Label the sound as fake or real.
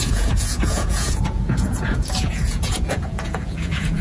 fake